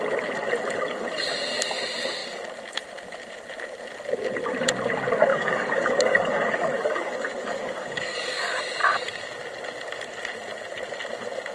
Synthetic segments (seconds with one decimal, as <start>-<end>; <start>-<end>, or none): 5.3-8.6